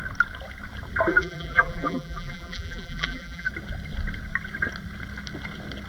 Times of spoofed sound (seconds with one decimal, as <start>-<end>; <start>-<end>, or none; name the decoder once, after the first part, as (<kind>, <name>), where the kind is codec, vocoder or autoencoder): 1.1-3.5 (vocoder, BigVGAN v2)